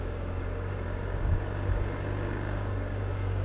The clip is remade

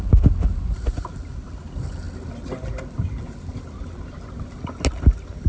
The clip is recorded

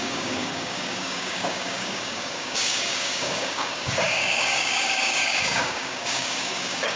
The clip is remade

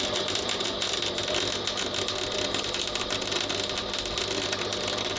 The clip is recorded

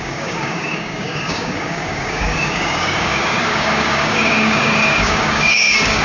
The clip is remade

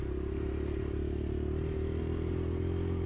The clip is recorded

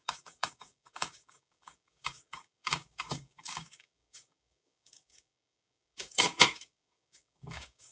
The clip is remade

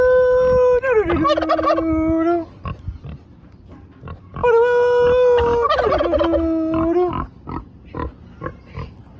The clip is recorded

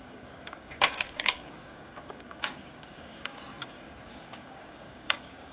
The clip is remade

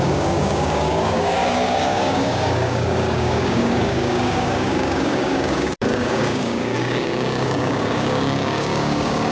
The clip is remade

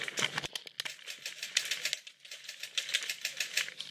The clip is recorded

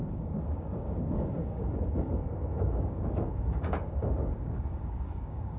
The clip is remade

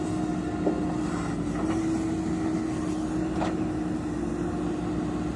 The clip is recorded